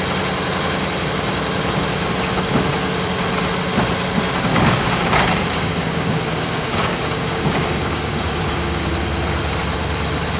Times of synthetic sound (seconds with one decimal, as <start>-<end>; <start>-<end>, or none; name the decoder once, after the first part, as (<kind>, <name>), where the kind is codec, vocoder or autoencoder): 4.5-9.0 (codec, DAC)